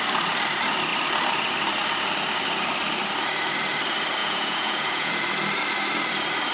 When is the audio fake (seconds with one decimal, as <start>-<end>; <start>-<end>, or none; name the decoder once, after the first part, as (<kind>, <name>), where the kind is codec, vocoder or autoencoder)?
4.2-5.1 (vocoder, Vocos)

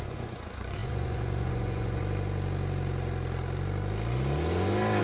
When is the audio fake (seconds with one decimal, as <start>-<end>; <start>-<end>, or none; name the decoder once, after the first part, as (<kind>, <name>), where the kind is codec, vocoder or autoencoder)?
0.0-2.0 (vocoder, Vocos)

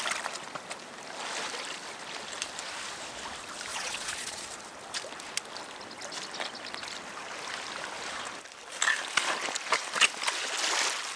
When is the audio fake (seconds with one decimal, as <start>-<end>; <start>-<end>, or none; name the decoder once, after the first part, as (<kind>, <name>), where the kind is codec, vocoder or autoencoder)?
3.7-4.4 (vocoder, Vocos)

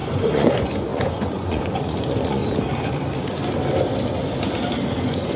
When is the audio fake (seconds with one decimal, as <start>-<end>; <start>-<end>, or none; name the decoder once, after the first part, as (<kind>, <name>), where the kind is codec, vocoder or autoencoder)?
0.0-2.4 (vocoder, Vocos); 5.0-5.4